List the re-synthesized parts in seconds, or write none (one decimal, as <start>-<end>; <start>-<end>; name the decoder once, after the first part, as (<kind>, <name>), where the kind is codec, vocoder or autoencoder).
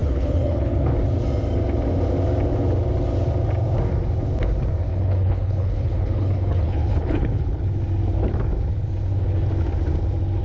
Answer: 0.0-0.9 (codec, HILCodec); 4.9-7.6